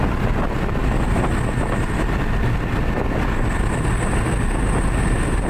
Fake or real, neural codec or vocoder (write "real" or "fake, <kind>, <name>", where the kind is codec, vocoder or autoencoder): real